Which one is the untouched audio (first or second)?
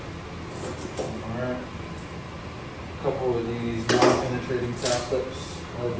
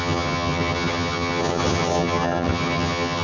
first